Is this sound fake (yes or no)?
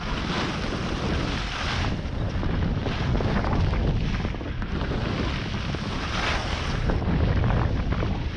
no